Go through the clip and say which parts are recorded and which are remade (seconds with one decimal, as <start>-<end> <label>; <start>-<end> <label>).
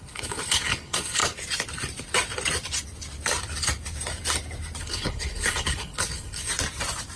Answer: 0.0-1.2 remade; 1.2-4.8 recorded; 4.8-6.5 remade; 6.5-7.2 recorded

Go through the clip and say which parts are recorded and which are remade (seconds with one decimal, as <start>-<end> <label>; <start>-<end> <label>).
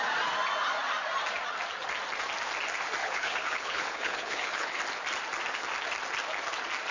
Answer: 0.0-3.0 recorded; 3.0-4.8 remade; 4.8-6.9 recorded